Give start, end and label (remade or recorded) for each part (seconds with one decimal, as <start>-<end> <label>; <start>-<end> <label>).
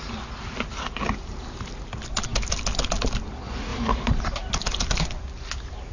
0.0-5.9 recorded